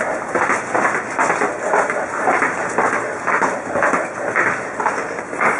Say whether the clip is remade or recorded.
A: recorded